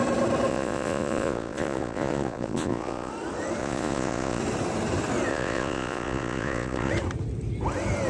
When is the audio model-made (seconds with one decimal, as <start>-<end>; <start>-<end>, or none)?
0.5-3.1; 3.6-4.4; 5.3-6.9